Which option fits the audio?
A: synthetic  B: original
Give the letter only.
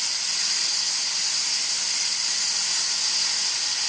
B